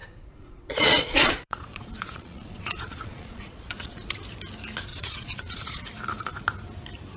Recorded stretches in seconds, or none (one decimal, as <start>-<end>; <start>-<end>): 4.2-4.9; 5.8-7.2